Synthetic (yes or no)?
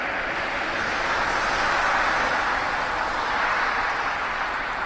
no